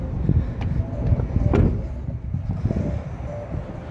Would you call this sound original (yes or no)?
yes